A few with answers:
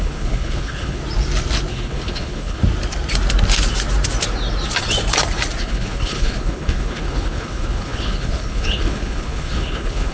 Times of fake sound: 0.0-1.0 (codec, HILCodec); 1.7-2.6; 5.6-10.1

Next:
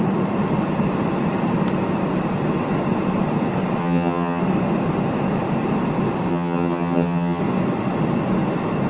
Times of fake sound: 3.8-4.4 (vocoder, HiFi-GAN); 6.3-7.4

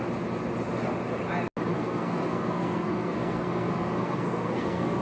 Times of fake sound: 1.7-5.0 (codec, SNAC)